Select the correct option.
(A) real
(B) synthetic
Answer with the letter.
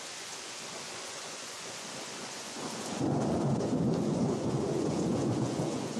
B